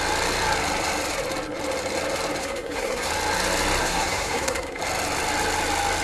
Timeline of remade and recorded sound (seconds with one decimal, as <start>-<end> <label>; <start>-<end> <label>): 0.0-2.4 recorded; 2.4-3.1 remade; 3.1-3.8 recorded; 3.8-4.8 remade; 4.8-6.0 recorded